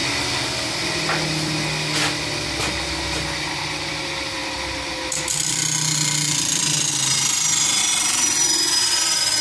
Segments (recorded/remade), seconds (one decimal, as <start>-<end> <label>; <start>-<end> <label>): 0.0-9.4 recorded